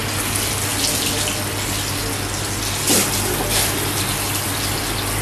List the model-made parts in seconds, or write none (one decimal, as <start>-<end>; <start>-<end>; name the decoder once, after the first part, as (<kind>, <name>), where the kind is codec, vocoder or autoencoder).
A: none